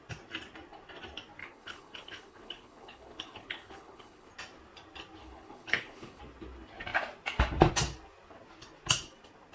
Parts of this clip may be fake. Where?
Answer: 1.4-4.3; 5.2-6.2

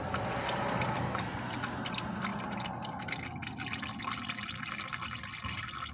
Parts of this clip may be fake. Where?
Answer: none

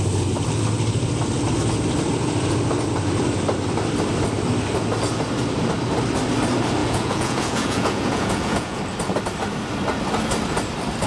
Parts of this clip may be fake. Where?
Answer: 6.8-8.8

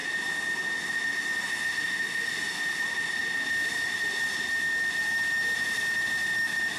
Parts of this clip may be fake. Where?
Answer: none

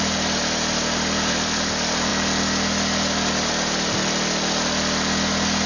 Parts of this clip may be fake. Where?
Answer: 0.0-2.1